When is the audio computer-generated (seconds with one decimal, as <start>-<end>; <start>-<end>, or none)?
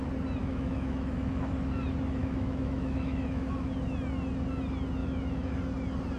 0.4-1.5; 2.2-3.7; 5.0-5.6